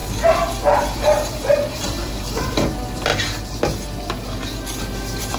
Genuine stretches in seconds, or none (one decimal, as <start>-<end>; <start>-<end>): 3.1-4.8